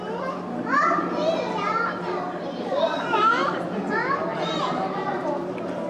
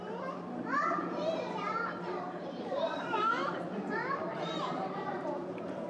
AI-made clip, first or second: second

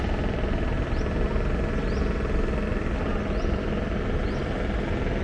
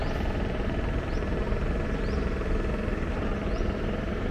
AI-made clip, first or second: second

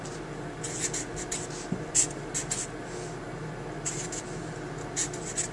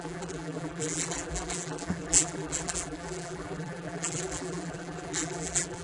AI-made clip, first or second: second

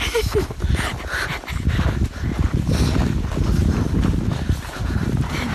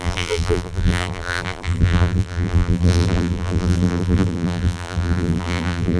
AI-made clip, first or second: second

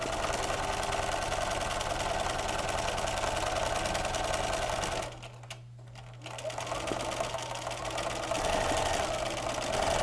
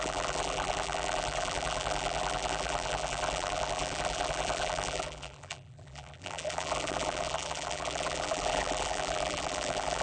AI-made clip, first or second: second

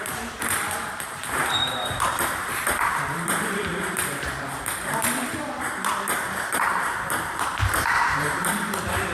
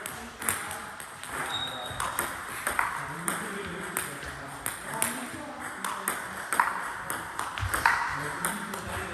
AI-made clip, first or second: first